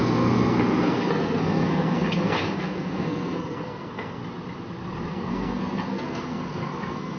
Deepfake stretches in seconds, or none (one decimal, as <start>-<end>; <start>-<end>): 0.0-4.2; 5.1-7.2